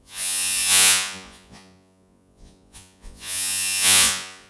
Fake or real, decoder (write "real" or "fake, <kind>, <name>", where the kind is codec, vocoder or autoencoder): fake, vocoder, Vocos